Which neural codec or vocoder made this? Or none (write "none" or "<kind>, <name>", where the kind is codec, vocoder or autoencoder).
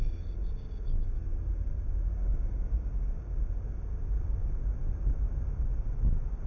none